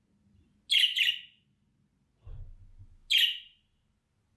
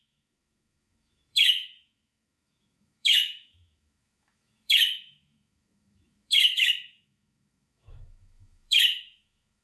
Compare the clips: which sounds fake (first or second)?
second